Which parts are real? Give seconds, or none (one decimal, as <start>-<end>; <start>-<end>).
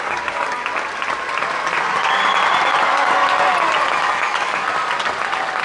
0.6-4.0; 4.7-5.6